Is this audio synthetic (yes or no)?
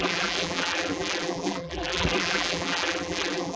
yes